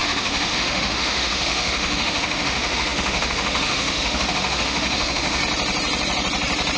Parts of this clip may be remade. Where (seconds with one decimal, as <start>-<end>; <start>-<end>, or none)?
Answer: 0.0-5.4